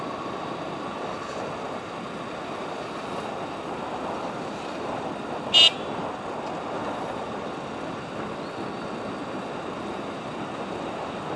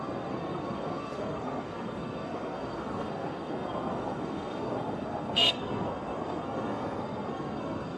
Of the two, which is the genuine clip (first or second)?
first